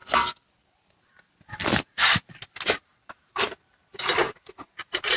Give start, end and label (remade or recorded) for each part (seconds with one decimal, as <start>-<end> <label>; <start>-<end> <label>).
0.0-3.1 recorded; 3.1-5.2 remade